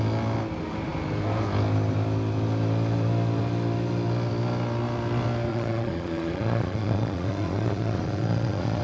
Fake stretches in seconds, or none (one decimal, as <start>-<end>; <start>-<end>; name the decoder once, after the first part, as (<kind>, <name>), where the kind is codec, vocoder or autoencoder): 5.5-8.8 (vocoder, Vocos)